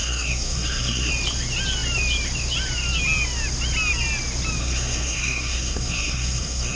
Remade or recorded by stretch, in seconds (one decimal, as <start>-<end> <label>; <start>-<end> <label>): 0.0-1.1 remade; 1.1-4.6 recorded; 4.6-6.8 remade